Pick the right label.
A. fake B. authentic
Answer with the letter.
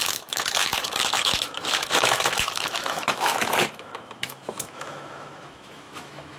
A